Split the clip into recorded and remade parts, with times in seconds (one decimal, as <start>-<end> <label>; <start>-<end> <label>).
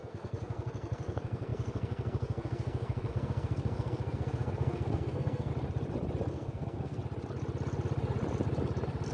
0.0-5.5 remade; 5.5-6.3 recorded; 6.3-7.0 remade; 7.0-9.1 recorded